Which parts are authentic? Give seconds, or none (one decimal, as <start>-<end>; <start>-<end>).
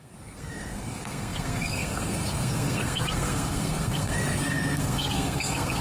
none